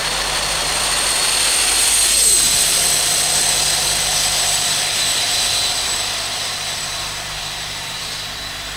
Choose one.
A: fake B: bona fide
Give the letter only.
A